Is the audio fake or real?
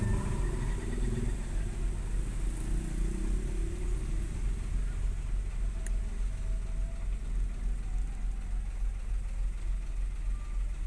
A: real